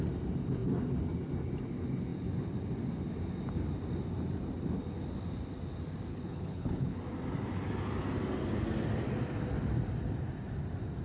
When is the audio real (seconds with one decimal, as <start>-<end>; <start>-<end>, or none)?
0.0-6.1; 7.0-11.0